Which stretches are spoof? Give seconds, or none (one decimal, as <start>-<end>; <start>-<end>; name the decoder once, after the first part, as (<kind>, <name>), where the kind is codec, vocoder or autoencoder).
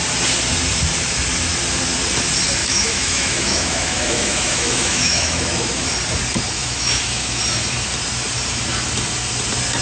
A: 2.6-5.9 (autoencoder, DAC-VAE); 6.6-7.4